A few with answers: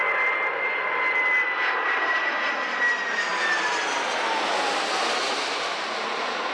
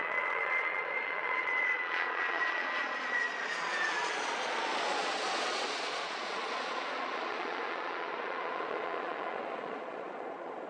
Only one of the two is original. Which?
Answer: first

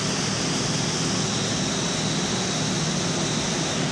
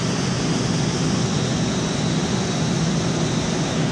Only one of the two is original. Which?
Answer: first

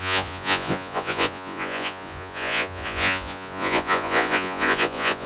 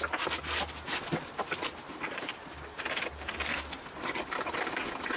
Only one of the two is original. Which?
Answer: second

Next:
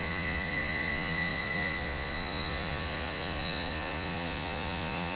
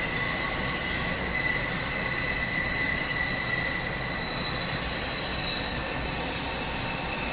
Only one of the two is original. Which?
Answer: second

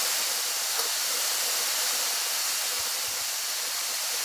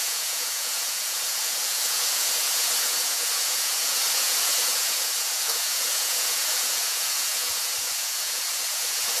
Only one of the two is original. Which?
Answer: first